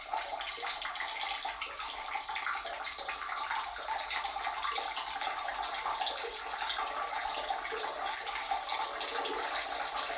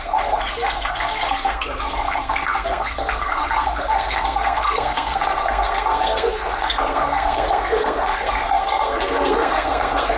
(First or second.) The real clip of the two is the first